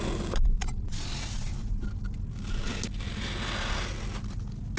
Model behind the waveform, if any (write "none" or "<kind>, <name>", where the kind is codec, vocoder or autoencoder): none